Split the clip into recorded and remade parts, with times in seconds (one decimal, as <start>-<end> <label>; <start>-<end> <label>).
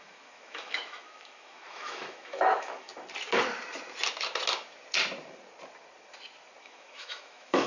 0.0-2.9 remade; 2.9-6.6 recorded; 6.6-7.7 remade